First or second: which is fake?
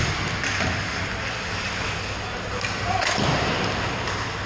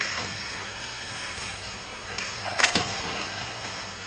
second